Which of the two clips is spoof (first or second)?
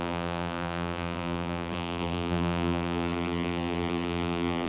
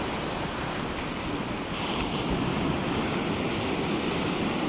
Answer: first